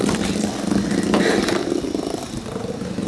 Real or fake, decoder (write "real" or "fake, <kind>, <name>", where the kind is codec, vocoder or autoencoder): fake, vocoder, BigVGAN v2